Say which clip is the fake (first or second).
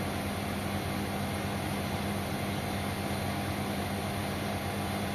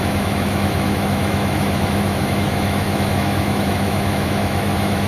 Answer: second